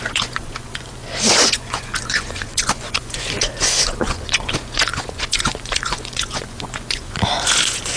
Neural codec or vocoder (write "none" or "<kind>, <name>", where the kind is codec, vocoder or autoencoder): vocoder, Vocos